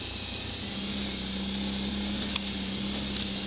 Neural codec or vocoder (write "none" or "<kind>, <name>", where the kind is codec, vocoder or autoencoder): none